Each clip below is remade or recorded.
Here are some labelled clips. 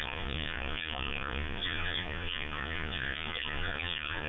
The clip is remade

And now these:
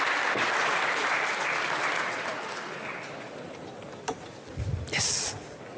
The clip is recorded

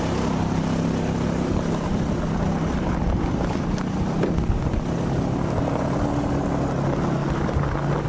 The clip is recorded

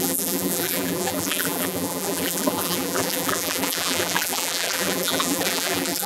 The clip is remade